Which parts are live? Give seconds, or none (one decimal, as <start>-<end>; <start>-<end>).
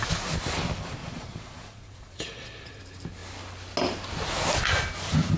0.0-1.0; 2.8-5.4